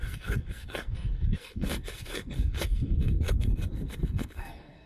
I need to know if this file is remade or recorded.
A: remade